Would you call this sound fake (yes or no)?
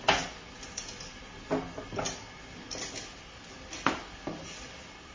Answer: no